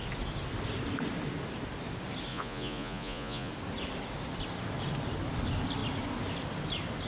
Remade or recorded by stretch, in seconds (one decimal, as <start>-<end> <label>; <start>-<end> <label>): 0.0-2.3 recorded; 2.3-3.5 remade; 3.5-7.1 recorded